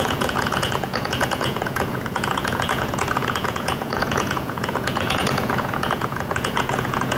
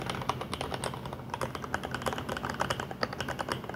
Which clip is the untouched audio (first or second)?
second